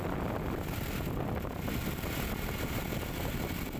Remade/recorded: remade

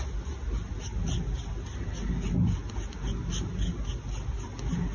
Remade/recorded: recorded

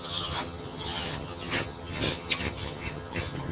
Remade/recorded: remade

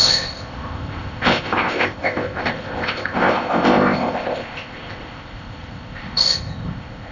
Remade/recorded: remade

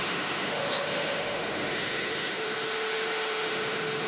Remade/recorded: remade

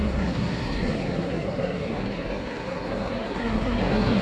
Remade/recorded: remade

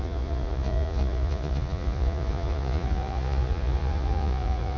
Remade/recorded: remade